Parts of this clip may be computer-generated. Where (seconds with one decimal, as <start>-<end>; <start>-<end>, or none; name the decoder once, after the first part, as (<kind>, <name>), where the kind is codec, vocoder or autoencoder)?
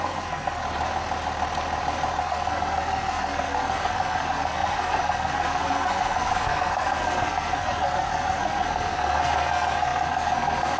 0.0-0.6 (codec, SNAC); 2.2-10.8